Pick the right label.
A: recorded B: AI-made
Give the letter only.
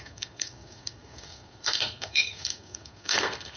B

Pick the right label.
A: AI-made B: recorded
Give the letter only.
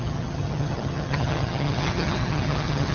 A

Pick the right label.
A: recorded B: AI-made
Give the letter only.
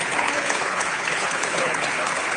B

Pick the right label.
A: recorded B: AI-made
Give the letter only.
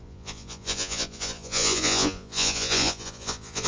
B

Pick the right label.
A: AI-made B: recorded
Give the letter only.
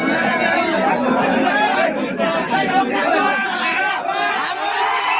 B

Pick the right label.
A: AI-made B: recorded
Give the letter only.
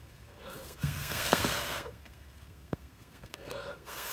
A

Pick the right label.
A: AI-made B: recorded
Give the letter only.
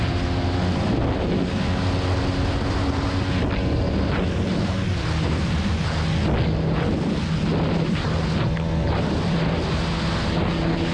B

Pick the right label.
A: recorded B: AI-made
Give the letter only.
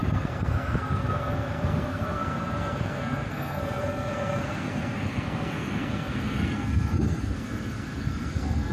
B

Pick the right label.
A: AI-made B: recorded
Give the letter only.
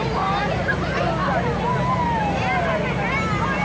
B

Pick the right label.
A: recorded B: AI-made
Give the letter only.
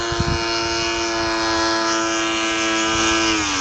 A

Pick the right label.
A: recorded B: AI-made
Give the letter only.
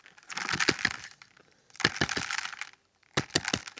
A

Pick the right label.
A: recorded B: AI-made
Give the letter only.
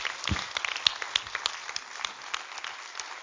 A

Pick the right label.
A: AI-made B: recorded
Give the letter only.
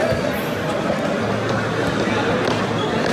B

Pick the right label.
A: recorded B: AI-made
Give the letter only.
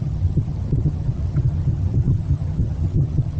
B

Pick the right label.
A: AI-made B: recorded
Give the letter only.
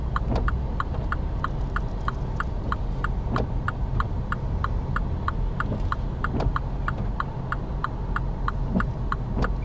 B